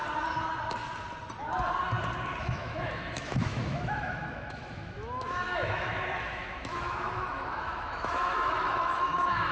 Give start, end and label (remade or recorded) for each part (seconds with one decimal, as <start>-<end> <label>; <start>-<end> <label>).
0.0-2.4 recorded; 2.4-9.5 remade